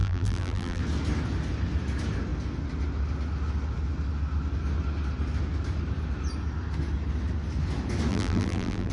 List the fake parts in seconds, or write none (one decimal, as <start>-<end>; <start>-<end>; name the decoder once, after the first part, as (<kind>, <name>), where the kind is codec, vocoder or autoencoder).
0.0-0.8 (vocoder, BigVGAN v2); 8.1-8.9